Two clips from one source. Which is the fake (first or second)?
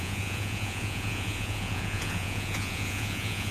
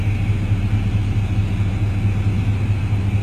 first